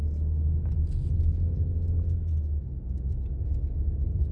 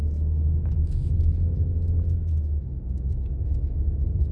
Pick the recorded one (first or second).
first